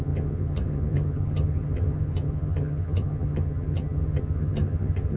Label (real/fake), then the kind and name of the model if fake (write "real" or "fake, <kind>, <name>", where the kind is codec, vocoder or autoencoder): fake, vocoder, HiFi-GAN